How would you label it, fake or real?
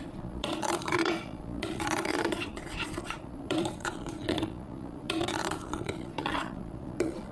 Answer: fake